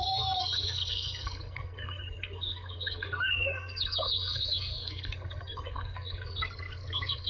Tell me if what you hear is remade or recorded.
remade